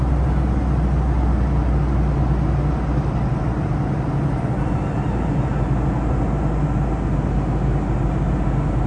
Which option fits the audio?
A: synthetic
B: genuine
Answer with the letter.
B